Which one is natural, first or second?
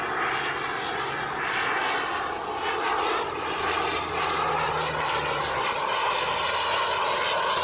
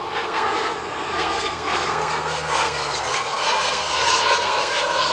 first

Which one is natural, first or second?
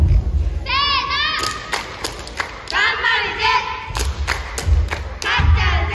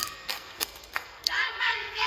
first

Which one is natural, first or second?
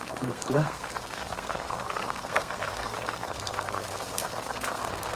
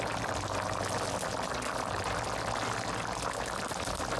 second